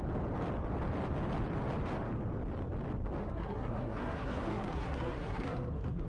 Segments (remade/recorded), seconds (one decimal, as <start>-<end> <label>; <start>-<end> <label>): 0.0-3.2 recorded; 3.2-6.1 remade